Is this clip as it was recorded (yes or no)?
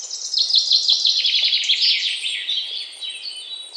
yes